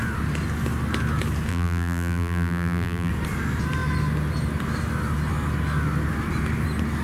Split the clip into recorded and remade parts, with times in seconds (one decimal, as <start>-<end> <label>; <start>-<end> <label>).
0.0-1.5 recorded; 1.5-3.1 remade; 3.1-7.0 recorded